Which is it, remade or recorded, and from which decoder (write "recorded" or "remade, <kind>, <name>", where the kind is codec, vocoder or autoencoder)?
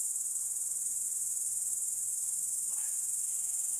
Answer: remade, autoencoder, DAC-VAE